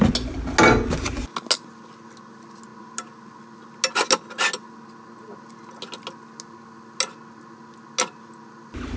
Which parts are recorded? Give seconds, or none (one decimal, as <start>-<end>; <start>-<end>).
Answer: 0.0-9.0